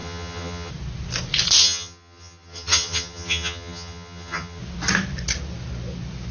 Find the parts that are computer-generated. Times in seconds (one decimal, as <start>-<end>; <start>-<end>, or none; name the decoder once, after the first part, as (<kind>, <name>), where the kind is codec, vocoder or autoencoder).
0.0-0.7 (vocoder, HiFi-GAN); 1.6-4.6